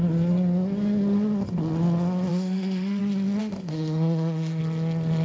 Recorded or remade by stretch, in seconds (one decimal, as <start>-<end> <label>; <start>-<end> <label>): 0.0-2.3 recorded; 2.3-3.0 remade; 3.0-3.4 recorded; 3.4-4.6 remade; 4.6-5.2 recorded